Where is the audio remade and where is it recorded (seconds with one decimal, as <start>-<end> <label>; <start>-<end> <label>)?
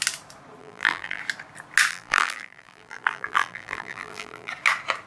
0.0-0.6 recorded; 0.6-1.2 remade; 1.2-1.9 recorded; 1.9-4.5 remade; 4.5-5.1 recorded